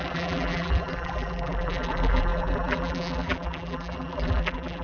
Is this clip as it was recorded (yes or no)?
no